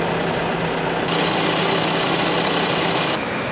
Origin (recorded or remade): recorded